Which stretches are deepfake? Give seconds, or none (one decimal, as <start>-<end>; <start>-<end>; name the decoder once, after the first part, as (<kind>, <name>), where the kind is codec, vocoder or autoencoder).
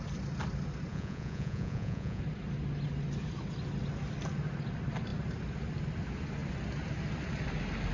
0.9-2.2 (vocoder, Vocos)